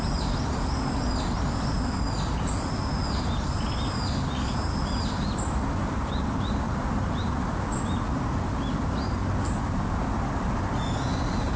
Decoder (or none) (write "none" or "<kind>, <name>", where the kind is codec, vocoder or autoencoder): none